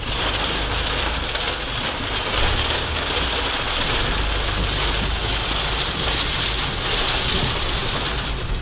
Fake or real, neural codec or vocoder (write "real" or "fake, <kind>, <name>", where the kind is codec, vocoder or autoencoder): real